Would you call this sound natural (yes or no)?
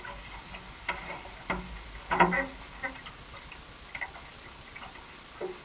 yes